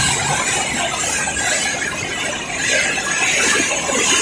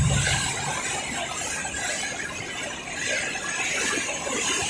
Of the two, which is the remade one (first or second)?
second